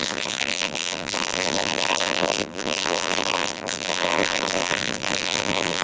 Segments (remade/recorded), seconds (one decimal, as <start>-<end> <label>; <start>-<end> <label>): 0.0-5.8 remade